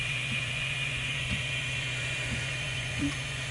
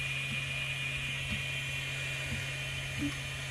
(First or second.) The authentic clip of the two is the second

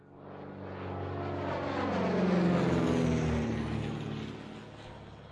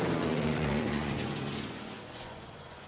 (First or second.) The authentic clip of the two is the first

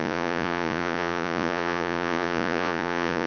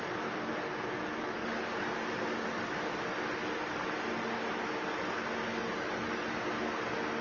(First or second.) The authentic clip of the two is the second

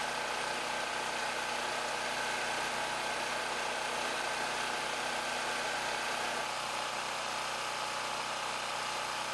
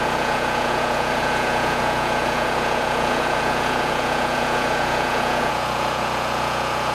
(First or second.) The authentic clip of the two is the first